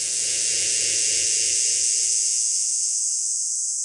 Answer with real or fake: fake